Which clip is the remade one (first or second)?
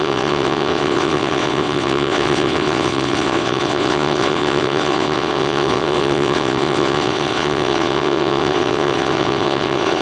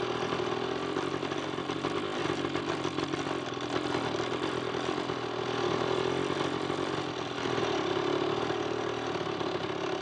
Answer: first